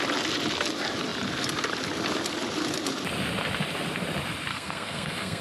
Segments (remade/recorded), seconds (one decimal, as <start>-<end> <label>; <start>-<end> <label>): 0.0-4.5 recorded; 4.5-5.4 remade

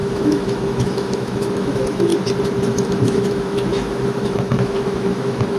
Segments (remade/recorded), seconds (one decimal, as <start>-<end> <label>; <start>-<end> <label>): 0.0-2.1 remade; 2.1-2.7 recorded; 2.7-5.6 remade